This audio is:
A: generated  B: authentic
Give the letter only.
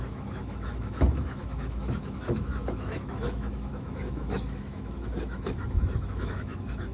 A